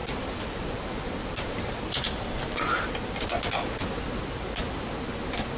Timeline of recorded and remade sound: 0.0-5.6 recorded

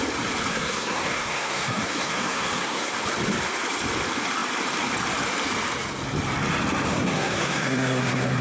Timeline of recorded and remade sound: 0.0-0.5 recorded; 0.5-2.9 remade; 2.9-6.9 recorded; 6.9-8.4 remade

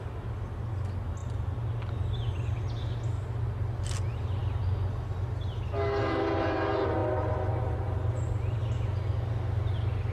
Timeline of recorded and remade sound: 0.0-10.1 recorded

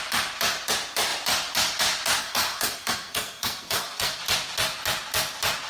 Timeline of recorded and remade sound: 0.0-2.2 recorded; 2.2-4.2 remade; 4.2-5.7 recorded

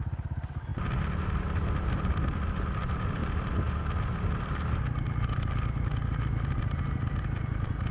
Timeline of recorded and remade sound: 0.0-7.9 recorded